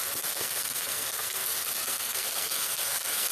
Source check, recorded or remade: remade